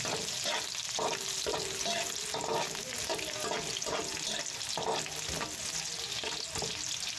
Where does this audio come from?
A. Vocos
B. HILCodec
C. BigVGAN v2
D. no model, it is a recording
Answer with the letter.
D